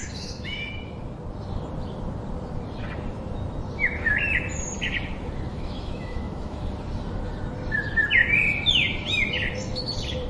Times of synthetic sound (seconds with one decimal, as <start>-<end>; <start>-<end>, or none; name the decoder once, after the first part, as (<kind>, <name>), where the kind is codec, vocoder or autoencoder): 0.0-0.5 (autoencoder, DAC-VAE); 5.5-6.6